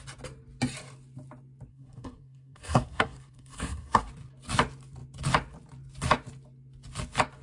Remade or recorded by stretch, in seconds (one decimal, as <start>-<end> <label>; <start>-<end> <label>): 0.0-1.7 recorded; 1.7-4.1 remade; 4.1-7.4 recorded